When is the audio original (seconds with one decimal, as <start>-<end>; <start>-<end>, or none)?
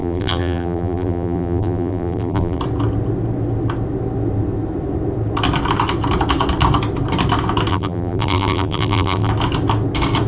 2.6-7.7; 9.3-10.3